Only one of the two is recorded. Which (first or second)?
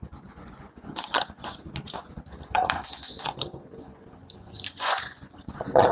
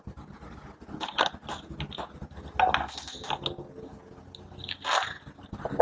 second